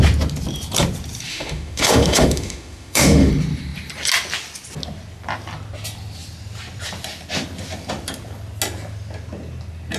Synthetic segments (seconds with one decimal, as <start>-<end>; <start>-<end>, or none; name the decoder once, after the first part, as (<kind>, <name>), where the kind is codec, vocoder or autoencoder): 1.3-3.3 (autoencoder, DAC-VAE)